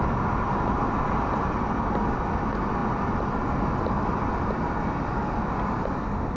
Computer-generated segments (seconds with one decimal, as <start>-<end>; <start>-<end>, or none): none